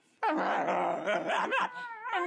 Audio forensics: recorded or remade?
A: recorded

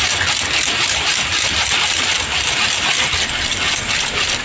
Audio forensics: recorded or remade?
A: recorded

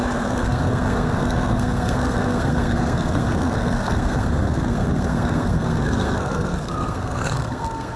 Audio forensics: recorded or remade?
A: remade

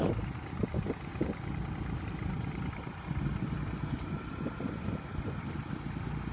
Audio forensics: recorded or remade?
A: recorded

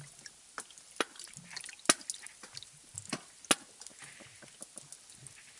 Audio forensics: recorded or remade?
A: recorded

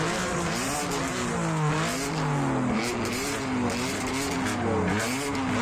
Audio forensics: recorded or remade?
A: recorded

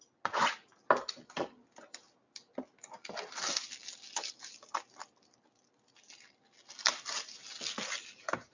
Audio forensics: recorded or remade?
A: recorded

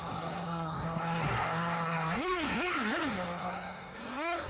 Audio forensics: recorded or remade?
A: remade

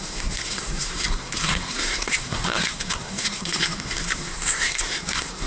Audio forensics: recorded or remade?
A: remade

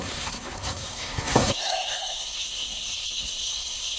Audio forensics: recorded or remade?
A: remade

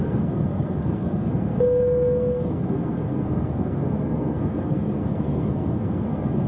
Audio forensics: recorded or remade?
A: remade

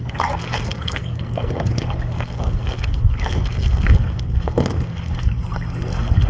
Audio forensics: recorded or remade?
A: remade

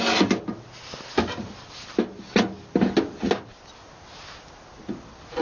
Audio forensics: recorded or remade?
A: recorded